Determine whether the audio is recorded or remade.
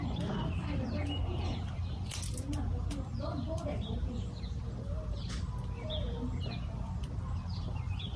recorded